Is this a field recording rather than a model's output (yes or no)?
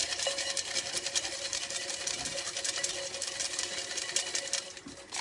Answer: yes